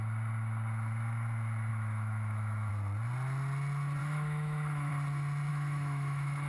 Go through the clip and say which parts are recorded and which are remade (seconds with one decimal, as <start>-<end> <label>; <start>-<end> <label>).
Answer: 0.0-1.7 recorded; 1.7-2.7 remade; 2.7-4.0 recorded; 4.0-4.9 remade; 4.9-5.5 recorded; 5.5-6.5 remade